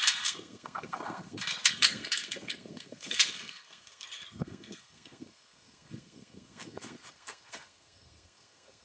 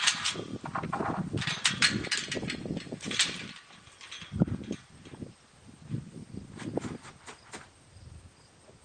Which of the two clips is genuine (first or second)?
second